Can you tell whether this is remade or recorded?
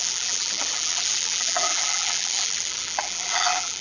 remade